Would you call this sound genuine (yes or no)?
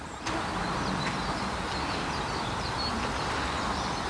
yes